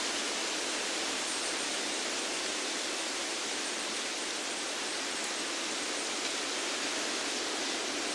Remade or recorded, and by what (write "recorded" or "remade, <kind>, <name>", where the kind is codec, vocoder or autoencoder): recorded